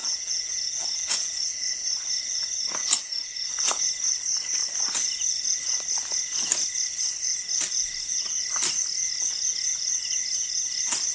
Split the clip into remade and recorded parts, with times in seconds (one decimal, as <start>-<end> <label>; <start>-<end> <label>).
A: 0.0-1.6 remade; 1.6-2.8 recorded; 2.8-3.8 remade; 3.8-11.1 recorded